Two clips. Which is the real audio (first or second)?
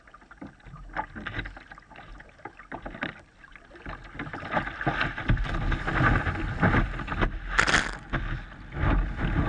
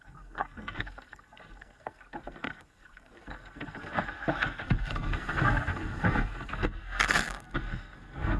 first